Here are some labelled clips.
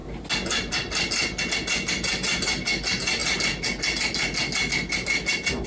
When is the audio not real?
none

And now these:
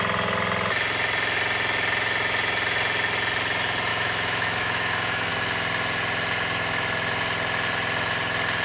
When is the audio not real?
3.9-5.3 (autoencoder, DAC-VAE)

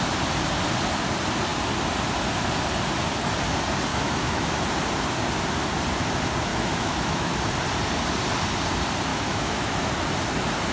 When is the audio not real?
3.9-4.5 (autoencoder, DAC-VAE); 6.5-7.3; 9.1-9.9

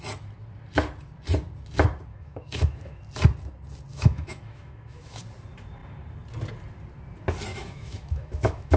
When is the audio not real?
2.1-3.0 (autoencoder, DAC-VAE); 3.9-5.2; 7.5-8.8

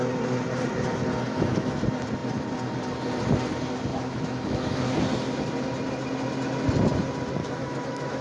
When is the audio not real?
1.3-1.8 (autoencoder, DAC-VAE); 3.9-5.0; 7.4-8.2

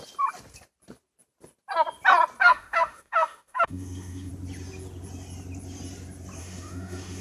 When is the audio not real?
2.4-4.3 (autoencoder, DAC-VAE); 6.4-7.2

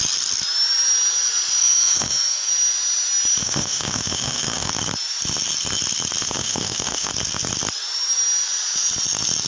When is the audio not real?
1.6-2.5 (autoencoder, DAC-VAE); 3.4-4.7; 6.2-7.1